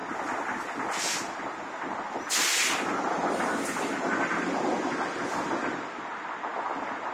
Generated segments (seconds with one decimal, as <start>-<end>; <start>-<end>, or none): none